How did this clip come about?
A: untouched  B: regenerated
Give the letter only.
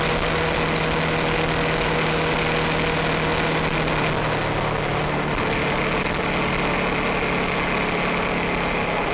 A